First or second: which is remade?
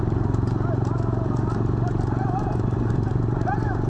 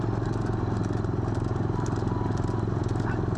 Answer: first